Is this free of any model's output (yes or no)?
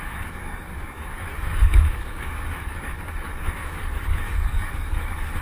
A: no